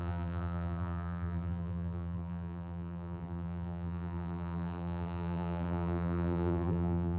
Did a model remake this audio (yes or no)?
yes